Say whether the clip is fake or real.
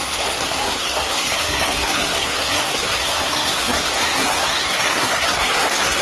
fake